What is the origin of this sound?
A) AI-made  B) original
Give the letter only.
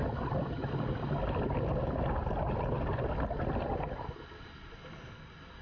B